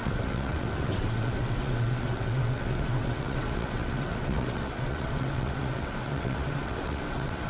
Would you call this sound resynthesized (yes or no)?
yes